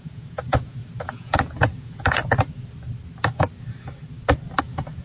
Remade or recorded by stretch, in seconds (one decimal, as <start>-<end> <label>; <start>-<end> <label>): 0.0-2.2 remade; 2.2-4.6 recorded; 4.6-5.0 remade